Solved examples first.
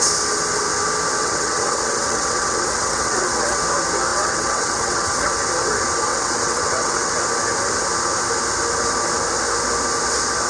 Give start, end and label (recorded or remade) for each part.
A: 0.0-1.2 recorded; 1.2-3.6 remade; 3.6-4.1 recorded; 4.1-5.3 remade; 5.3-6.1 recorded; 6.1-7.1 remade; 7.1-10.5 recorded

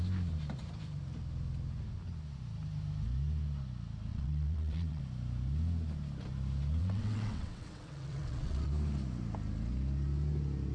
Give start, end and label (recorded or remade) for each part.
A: 0.0-4.1 recorded; 4.1-5.0 remade; 5.0-6.8 recorded; 6.8-8.7 remade; 8.7-10.7 recorded